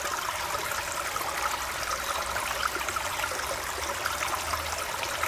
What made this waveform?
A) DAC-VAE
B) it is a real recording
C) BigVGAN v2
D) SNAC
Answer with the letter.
B